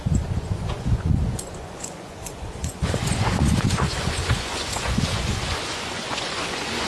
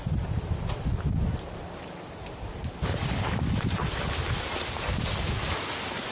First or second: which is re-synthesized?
first